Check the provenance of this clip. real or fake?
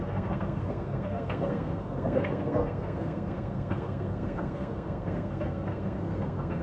fake